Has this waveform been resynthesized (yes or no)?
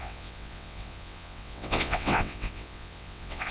yes